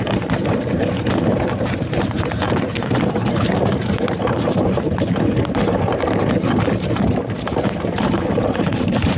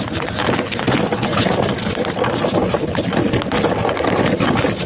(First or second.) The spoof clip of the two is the first